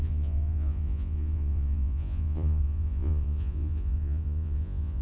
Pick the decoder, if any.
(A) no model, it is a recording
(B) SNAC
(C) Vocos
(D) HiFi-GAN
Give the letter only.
C